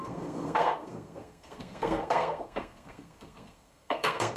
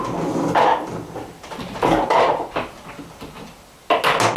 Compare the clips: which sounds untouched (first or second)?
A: second